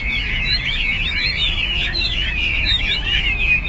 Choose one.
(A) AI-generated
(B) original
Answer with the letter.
A